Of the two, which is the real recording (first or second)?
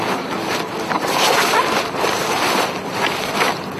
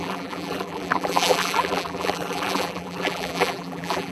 first